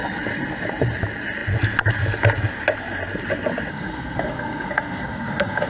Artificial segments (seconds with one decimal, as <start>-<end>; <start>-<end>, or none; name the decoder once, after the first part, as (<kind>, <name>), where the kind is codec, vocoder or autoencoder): 3.7-5.7 (codec, SNAC)